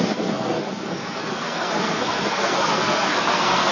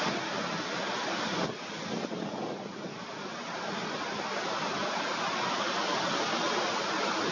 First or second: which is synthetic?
first